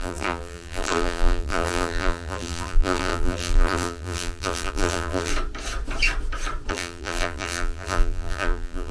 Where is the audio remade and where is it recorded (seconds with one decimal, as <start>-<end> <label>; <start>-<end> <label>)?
0.0-5.3 remade; 5.3-6.7 recorded; 6.7-8.9 remade